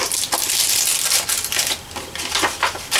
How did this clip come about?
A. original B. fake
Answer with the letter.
A